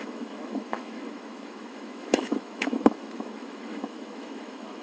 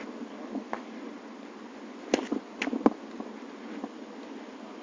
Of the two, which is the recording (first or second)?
second